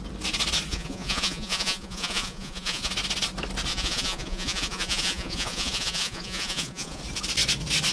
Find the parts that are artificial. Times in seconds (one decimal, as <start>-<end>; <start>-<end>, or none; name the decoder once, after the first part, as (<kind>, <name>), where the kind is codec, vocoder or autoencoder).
0.7-2.9 (vocoder, Vocos); 3.7-7.0